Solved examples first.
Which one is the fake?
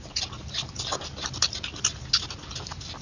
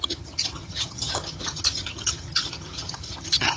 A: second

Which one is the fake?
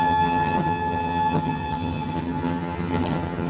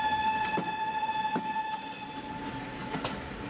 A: first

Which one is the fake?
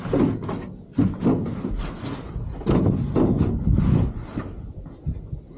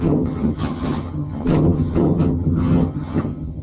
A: second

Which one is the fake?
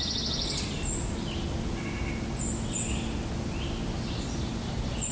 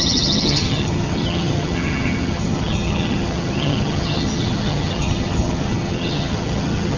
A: second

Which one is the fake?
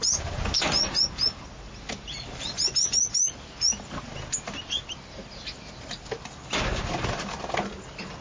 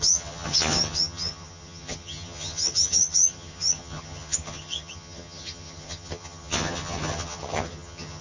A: second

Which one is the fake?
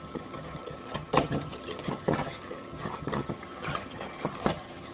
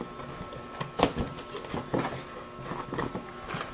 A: first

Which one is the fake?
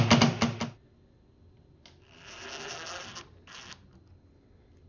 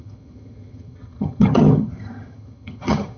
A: second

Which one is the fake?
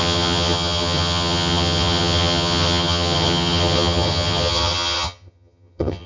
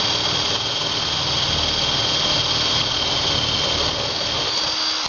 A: first